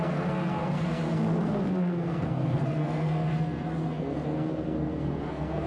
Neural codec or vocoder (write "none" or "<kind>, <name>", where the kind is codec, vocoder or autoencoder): codec, SNAC